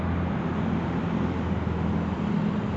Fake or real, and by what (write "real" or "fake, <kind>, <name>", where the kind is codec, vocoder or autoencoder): fake, vocoder, BigVGAN v2